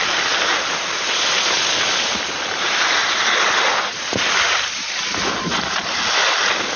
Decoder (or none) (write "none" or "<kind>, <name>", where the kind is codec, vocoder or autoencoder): none